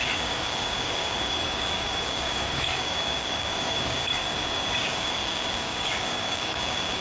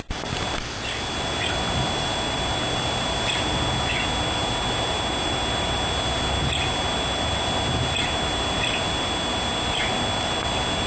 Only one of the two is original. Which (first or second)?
second